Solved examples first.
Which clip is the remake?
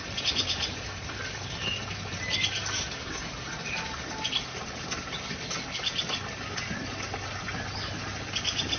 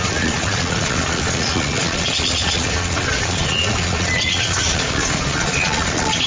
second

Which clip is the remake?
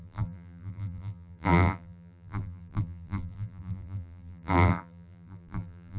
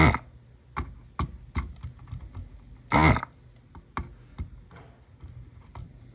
first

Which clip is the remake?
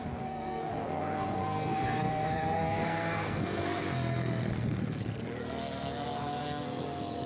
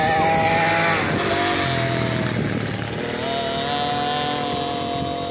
first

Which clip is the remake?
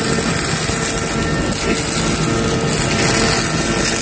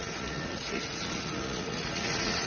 second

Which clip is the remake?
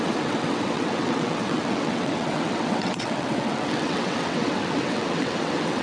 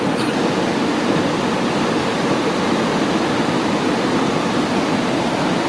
first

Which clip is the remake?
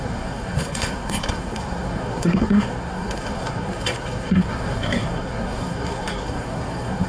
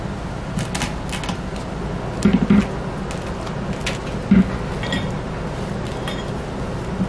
first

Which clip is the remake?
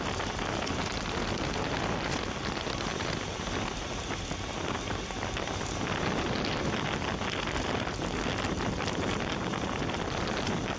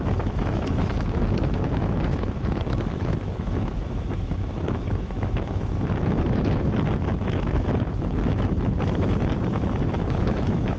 second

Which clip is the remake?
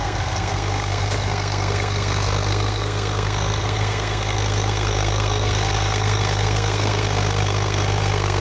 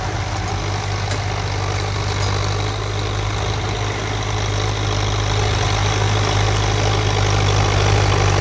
first